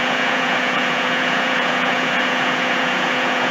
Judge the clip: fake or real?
fake